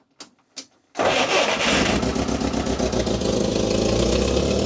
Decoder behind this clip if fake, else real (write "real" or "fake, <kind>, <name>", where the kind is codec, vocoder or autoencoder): real